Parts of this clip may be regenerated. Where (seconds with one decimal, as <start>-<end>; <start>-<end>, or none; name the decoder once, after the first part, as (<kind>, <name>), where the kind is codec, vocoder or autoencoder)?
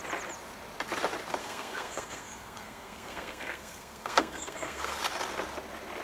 1.4-5.0 (codec, SNAC)